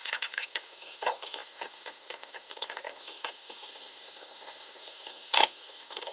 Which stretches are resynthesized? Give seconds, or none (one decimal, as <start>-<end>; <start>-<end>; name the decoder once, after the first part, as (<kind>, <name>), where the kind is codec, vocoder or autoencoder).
0.0-6.1 (codec, SNAC)